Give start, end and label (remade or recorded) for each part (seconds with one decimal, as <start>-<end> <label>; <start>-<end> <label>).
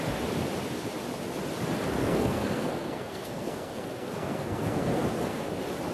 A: 0.0-2.0 recorded; 2.0-5.5 remade; 5.5-5.9 recorded